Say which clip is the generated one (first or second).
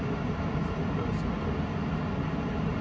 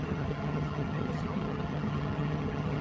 second